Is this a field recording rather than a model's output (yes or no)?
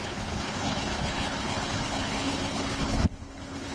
no